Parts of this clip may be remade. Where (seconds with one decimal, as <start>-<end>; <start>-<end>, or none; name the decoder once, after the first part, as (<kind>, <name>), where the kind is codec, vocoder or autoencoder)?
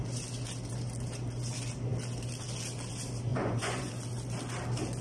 3.3-3.9 (vocoder, Vocos)